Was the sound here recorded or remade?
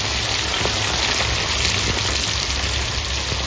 recorded